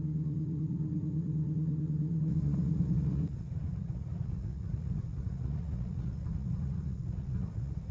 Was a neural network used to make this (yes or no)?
yes